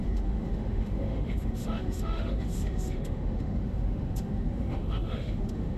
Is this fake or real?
fake